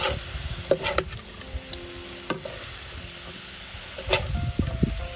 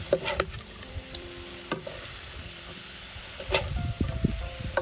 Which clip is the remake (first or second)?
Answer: second